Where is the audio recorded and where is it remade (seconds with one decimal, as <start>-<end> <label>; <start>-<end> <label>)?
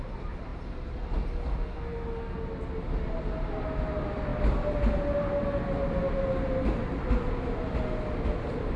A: 0.0-8.8 recorded